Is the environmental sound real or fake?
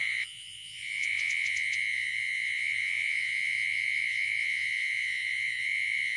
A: fake